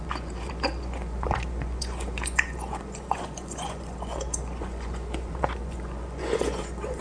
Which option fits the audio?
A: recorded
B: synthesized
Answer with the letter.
B